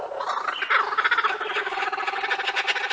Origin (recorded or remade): recorded